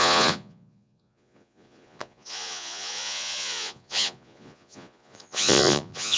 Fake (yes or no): yes